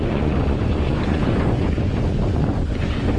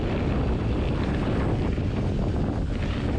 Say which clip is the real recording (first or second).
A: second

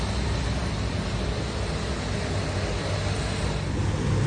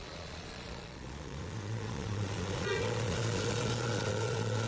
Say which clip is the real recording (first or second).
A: first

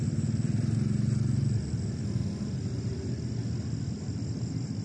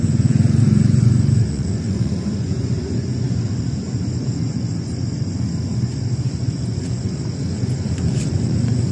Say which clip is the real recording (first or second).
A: first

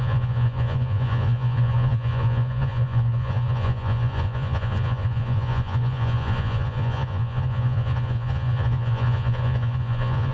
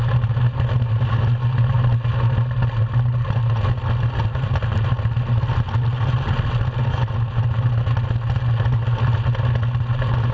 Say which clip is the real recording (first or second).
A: second